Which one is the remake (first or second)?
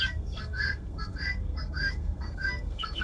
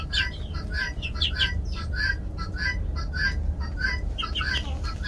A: first